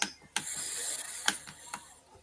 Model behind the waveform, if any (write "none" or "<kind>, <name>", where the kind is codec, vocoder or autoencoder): none